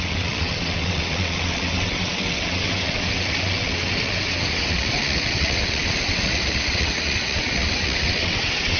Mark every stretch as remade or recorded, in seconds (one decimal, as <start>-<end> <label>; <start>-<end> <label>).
0.0-8.8 remade